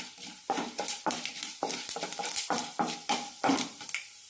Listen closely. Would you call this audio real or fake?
fake